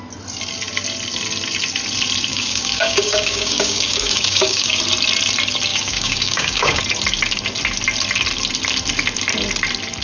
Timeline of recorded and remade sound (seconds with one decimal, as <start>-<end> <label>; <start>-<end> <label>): 0.0-2.3 recorded; 2.3-4.8 remade; 4.8-5.7 recorded; 5.7-6.8 remade; 6.8-10.0 recorded